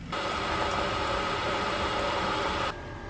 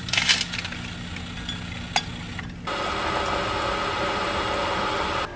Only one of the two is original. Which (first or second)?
second